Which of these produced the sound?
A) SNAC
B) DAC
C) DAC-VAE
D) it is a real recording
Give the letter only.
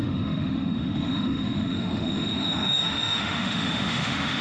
C